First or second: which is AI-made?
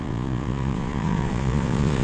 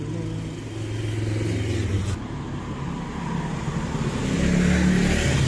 first